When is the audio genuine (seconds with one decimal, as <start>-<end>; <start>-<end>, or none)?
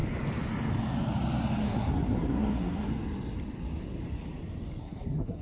0.0-1.6; 2.9-4.8